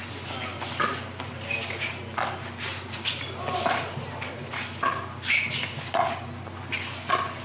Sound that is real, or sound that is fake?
real